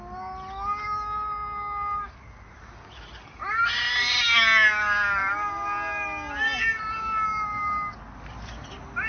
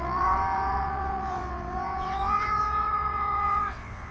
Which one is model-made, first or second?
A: second